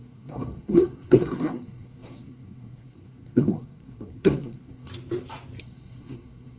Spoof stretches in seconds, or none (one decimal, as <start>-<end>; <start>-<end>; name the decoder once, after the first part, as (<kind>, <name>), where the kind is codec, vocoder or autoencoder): 0.0-4.9 (codec, SNAC); 5.6-6.6